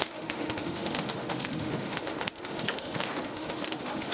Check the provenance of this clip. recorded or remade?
remade